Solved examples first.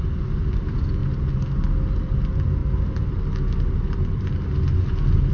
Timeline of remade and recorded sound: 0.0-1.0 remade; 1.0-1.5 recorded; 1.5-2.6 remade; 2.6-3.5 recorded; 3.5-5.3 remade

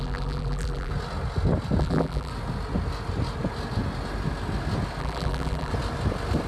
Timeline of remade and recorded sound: 0.0-0.9 remade; 0.9-1.8 recorded; 1.8-2.3 remade; 2.3-5.0 recorded; 5.0-5.7 remade; 5.7-6.5 recorded

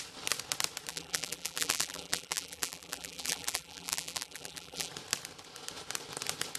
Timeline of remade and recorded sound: 0.0-0.9 recorded; 0.9-4.9 remade; 4.9-6.6 recorded

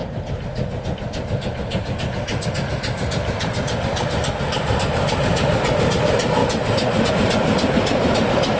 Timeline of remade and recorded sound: 0.0-2.5 recorded; 2.5-5.3 remade; 5.3-5.9 recorded; 5.9-6.4 remade; 6.4-7.1 recorded; 7.1-8.6 remade

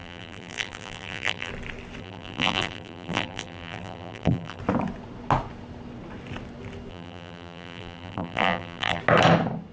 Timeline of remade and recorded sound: 0.0-1.5 remade; 1.5-2.0 recorded; 2.0-4.6 remade; 4.6-6.9 recorded; 6.9-9.0 remade; 9.0-9.7 recorded

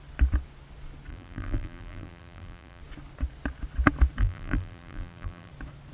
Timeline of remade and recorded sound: 0.0-1.1 recorded; 1.1-2.8 remade; 2.8-4.2 recorded; 4.2-5.5 remade; 5.5-5.9 recorded

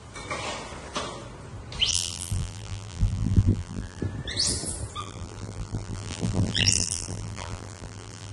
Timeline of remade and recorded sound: 0.0-1.9 recorded; 1.9-4.0 remade; 4.0-5.0 recorded; 5.0-8.3 remade